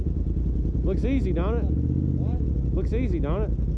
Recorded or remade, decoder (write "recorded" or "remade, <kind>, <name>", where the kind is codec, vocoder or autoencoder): recorded